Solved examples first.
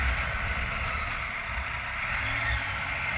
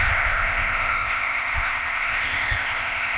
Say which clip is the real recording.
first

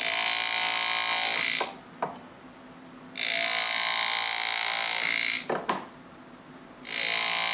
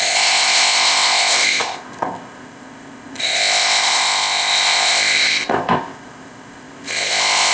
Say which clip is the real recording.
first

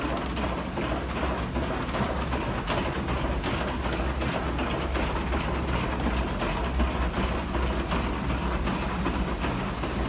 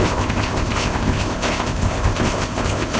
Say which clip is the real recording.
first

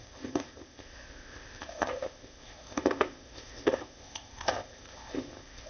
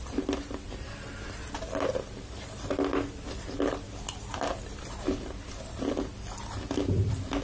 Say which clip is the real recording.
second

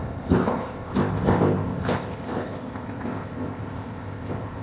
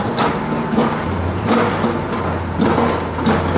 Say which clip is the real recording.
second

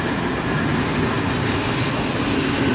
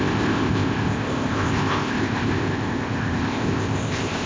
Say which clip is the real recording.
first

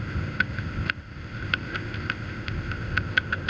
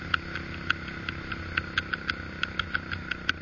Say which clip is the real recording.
second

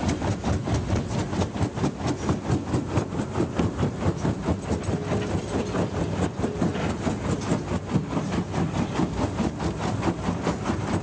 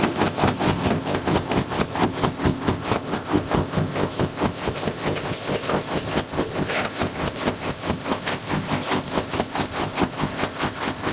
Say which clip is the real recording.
first